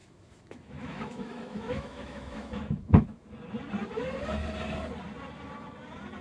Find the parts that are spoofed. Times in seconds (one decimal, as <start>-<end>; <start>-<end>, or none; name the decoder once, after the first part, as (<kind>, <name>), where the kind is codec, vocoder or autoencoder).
0.0-3.3 (autoencoder, DAC-VAE)

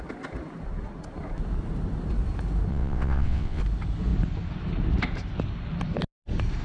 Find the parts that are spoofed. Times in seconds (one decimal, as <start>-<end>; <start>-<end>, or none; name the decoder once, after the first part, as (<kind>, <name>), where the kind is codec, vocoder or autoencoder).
2.7-3.6 (vocoder, WaveNeXt)

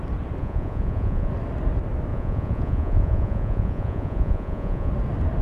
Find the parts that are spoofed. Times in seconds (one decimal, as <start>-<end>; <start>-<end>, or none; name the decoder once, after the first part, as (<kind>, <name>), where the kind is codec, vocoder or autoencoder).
0.4-1.3 (vocoder, Vocos); 2.1-4.9